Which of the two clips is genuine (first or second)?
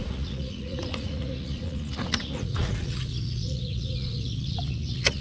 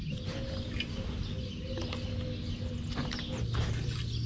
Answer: second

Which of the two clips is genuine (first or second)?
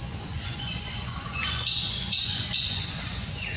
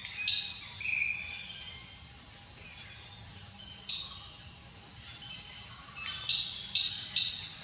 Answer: second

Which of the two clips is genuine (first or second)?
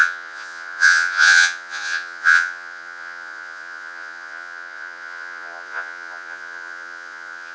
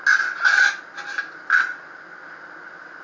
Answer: second